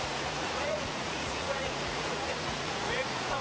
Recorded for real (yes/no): no